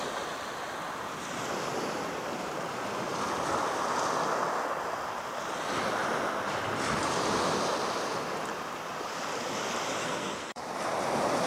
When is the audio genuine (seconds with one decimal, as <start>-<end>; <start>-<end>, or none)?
0.0-10.0; 10.6-11.5